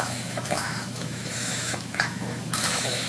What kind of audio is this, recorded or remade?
remade